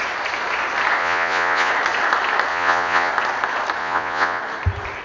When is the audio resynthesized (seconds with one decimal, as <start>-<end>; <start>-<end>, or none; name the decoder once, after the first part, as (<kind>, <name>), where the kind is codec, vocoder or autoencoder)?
1.0-1.7 (vocoder, Vocos); 2.5-3.1; 3.8-4.4